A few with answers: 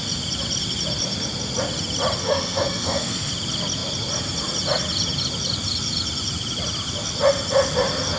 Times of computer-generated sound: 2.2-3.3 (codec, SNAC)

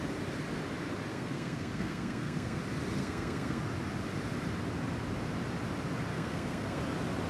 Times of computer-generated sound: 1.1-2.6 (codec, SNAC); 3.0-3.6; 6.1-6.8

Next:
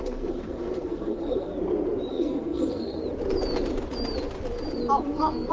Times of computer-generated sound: 0.0-1.5 (codec, SNAC); 2.1-3.0; 5.0-5.5

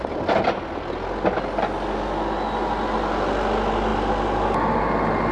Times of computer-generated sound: none

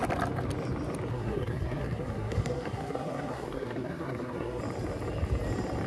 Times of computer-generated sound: 1.1-4.6 (codec, SNAC)

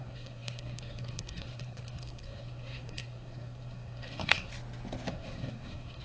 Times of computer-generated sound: 0.0-4.5 (codec, SNAC); 5.1-6.0